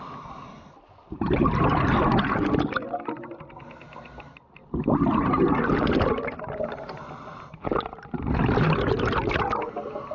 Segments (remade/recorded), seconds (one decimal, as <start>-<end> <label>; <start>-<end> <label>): 0.0-10.1 recorded